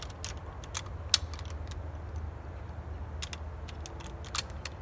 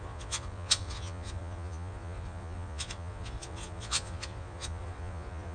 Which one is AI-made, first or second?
second